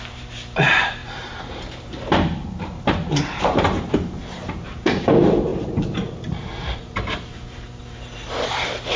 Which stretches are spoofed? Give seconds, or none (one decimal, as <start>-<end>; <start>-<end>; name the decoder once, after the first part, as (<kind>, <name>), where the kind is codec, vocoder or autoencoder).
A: 0.0-9.0 (vocoder, BigVGAN v2)